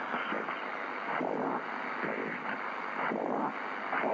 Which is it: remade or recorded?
recorded